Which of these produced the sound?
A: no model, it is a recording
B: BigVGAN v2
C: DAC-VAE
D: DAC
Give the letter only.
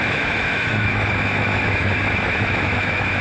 C